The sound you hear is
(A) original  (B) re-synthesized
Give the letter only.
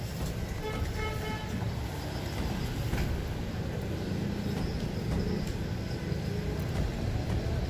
A